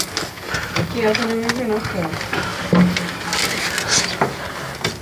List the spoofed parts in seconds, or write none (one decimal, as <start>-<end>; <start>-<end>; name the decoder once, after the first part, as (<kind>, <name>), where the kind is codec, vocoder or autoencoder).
none